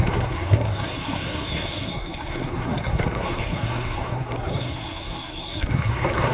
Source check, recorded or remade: remade